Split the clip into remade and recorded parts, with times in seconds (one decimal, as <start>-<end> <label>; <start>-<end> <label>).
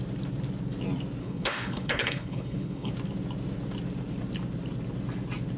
0.0-1.2 recorded; 1.2-2.9 remade; 2.9-5.6 recorded